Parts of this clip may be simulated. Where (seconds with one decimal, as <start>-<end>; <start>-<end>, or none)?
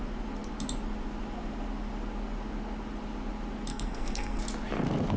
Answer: 3.7-4.4